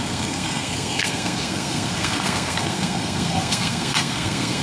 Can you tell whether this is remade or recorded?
remade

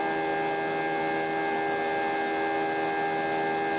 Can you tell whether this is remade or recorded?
recorded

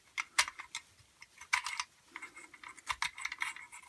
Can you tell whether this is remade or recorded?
recorded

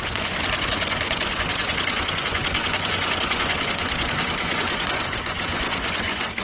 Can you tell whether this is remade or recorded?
remade